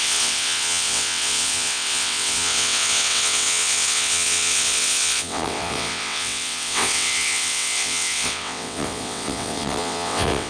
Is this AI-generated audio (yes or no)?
yes